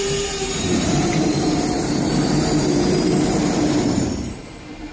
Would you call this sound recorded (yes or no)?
no